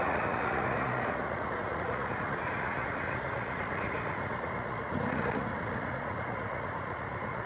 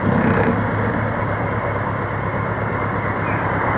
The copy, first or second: first